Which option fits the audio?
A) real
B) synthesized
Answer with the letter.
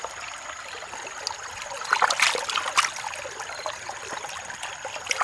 A